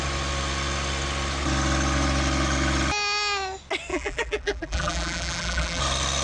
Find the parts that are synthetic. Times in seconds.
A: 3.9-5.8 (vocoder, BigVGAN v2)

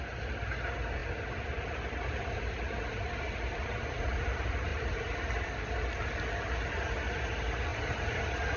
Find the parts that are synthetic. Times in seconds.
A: 1.0-3.7 (vocoder, BigVGAN v2); 4.7-5.6; 7.7-8.2